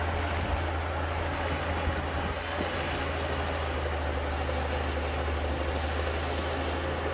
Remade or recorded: recorded